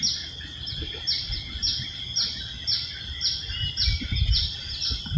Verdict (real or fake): real